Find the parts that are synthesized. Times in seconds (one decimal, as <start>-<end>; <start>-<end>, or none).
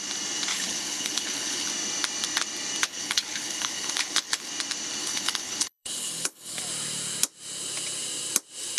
0.5-1.7; 2.8-4.5; 5.0-6.6